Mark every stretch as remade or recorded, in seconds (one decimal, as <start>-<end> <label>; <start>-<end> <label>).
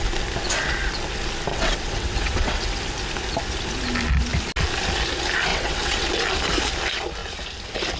0.0-1.5 recorded; 1.5-2.8 remade; 2.8-5.5 recorded; 5.5-6.1 remade; 6.1-8.0 recorded